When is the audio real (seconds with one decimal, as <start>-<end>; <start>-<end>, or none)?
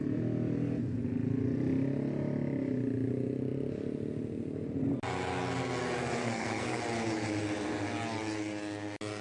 0.0-6.2; 6.8-9.2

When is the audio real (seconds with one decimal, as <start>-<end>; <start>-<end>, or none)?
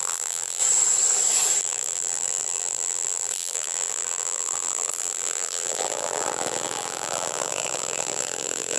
0.6-1.6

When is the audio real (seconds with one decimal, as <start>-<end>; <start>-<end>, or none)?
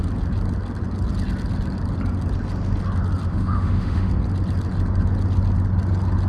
0.0-3.3; 4.1-6.3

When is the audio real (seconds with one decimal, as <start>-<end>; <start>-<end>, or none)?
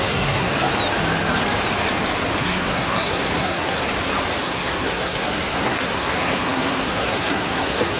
0.5-2.4; 3.8-4.4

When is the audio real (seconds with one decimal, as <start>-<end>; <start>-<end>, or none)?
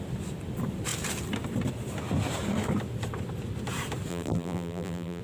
0.0-4.1